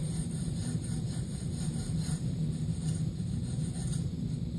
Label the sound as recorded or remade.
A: remade